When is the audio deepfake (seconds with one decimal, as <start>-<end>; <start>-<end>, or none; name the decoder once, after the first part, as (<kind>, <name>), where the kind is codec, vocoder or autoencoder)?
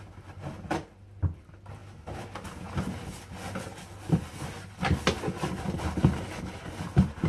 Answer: none